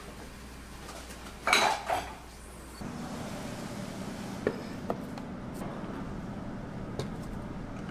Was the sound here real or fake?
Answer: real